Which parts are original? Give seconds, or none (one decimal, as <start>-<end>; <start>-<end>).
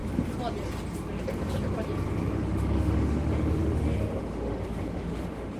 0.0-2.3